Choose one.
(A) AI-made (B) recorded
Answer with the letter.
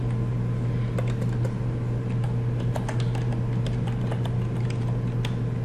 B